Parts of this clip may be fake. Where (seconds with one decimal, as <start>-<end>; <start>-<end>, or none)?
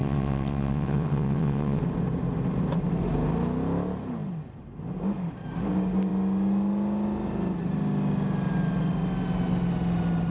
0.0-1.8